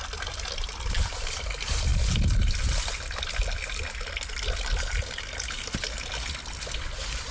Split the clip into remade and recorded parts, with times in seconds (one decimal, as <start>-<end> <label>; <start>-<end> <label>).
0.0-7.3 recorded